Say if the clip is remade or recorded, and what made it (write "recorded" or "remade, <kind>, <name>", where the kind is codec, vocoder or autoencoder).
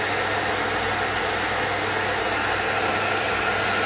recorded